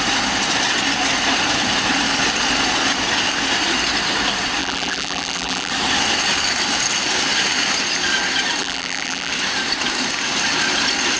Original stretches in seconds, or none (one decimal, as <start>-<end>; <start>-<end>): 0.0-4.6; 5.7-8.6; 9.3-11.2